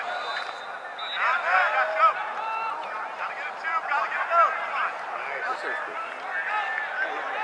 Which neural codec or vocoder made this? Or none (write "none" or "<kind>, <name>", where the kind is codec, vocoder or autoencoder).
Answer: none